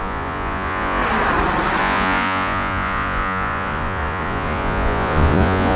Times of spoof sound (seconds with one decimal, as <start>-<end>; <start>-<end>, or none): 0.0-1.0; 1.8-5.8